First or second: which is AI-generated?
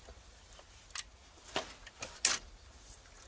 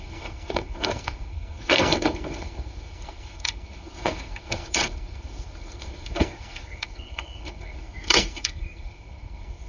second